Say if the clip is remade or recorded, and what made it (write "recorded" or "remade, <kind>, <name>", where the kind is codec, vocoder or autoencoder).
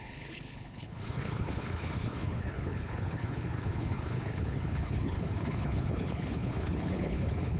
remade, codec, HILCodec